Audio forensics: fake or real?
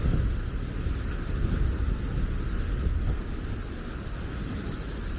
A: real